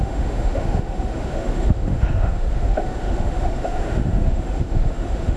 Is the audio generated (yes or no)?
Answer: yes